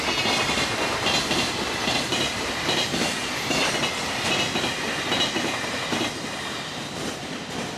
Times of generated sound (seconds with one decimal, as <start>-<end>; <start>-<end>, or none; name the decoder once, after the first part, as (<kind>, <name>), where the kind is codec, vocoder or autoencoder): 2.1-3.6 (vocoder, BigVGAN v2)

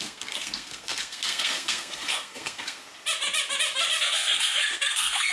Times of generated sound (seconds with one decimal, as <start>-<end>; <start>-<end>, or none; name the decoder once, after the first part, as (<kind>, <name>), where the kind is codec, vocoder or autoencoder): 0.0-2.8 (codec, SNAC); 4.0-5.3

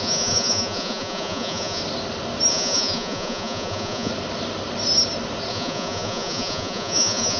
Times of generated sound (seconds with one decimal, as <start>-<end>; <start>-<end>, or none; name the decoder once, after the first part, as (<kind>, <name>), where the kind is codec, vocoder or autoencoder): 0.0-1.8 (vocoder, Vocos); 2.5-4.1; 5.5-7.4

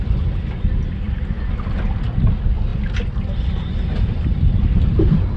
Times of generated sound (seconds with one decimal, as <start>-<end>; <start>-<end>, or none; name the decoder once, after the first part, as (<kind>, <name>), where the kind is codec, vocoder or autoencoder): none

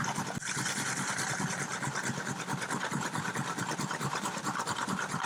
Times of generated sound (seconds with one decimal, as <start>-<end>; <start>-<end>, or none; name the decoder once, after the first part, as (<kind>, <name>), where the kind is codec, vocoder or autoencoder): 1.1-1.7 (vocoder, BigVGAN v2); 2.9-5.3

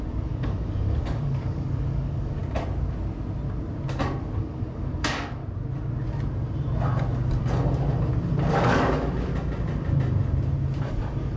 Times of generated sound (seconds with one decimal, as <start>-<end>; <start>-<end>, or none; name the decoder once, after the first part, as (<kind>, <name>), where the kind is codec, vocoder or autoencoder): 0.0-2.4 (codec, DAC); 4.2-5.4; 8.5-9.3; 10.8-11.4

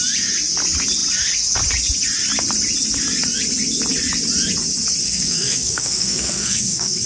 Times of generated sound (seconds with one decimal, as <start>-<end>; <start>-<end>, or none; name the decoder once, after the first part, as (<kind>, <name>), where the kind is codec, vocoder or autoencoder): 5.0-7.1 (codec, SNAC)

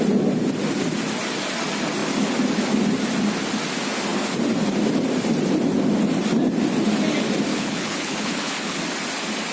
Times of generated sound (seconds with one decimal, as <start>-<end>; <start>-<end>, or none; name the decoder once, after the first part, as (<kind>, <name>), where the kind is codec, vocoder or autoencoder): 7.5-8.8 (codec, HILCodec)